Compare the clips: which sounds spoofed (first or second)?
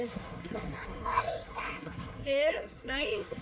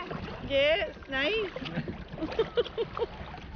first